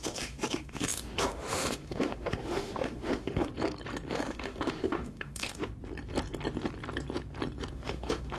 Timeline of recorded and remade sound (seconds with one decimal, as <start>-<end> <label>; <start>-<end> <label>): 0.0-3.5 remade; 3.5-4.1 recorded; 4.1-5.7 remade; 5.7-7.7 recorded; 7.7-8.4 remade

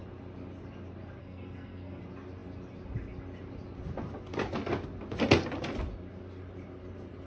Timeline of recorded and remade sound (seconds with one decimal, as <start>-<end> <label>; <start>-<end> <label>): 0.0-1.2 recorded; 1.2-2.0 remade; 2.0-7.3 recorded

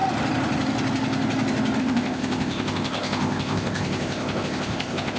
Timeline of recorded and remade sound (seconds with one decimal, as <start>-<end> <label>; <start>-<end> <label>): 0.0-1.8 recorded; 1.8-5.2 remade

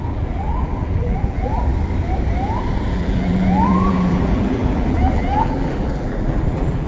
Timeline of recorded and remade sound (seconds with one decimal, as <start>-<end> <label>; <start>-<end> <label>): 0.0-1.7 remade; 1.7-2.9 recorded; 2.9-6.9 remade

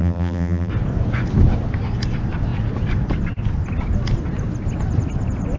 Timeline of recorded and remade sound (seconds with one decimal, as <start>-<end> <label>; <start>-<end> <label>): 0.0-0.7 remade; 0.7-5.6 recorded